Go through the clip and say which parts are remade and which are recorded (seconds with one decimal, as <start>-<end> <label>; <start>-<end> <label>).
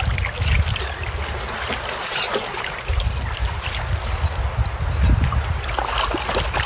0.0-2.0 recorded; 2.0-2.9 remade; 2.9-6.7 recorded